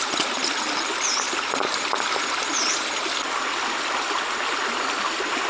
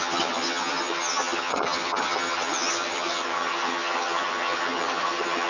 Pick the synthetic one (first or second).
second